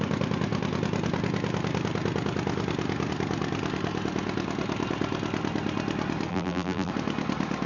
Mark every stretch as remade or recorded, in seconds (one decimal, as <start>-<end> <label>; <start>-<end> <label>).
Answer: 0.0-6.3 recorded; 6.3-6.9 remade; 6.9-7.7 recorded